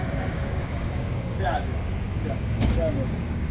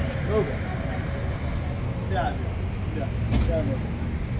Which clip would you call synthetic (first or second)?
first